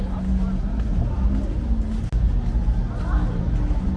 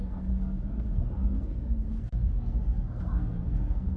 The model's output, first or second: second